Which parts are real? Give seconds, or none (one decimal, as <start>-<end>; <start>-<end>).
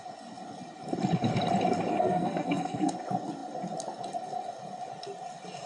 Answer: 0.0-1.9; 2.9-5.7